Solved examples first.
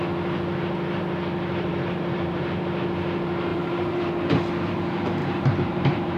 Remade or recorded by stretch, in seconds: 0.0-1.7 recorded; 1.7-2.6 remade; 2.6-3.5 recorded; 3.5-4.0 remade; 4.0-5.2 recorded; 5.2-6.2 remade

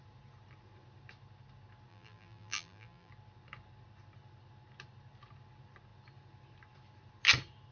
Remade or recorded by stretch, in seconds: 0.0-1.9 recorded; 1.9-3.1 remade; 3.1-7.7 recorded

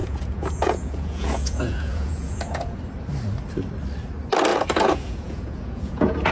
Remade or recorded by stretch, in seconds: 0.0-2.8 remade; 2.8-4.5 recorded; 4.5-6.3 remade

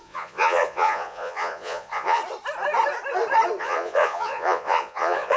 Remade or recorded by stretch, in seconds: 0.0-2.2 remade; 2.2-3.6 recorded; 3.6-5.4 remade

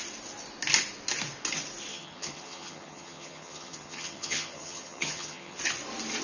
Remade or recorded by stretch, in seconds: 0.0-1.9 recorded; 1.9-5.6 remade; 5.6-6.2 recorded